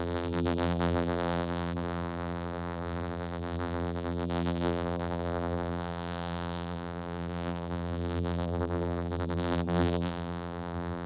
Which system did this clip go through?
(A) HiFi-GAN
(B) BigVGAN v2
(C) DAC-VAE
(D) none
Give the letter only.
B